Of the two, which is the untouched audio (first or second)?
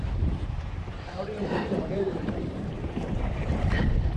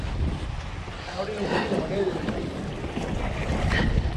second